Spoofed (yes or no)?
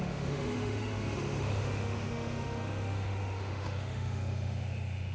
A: yes